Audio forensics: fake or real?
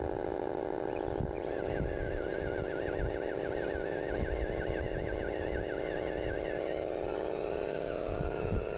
real